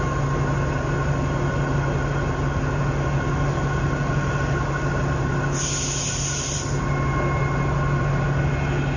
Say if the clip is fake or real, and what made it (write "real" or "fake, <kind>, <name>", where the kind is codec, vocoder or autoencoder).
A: real